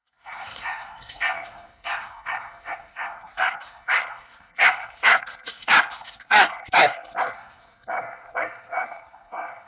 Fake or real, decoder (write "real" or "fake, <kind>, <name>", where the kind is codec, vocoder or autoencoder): fake, codec, SNAC